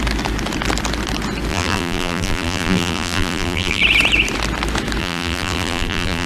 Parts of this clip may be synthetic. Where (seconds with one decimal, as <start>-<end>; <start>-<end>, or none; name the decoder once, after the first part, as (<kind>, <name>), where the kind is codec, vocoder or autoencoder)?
1.5-3.8 (vocoder, BigVGAN v2); 5.0-6.3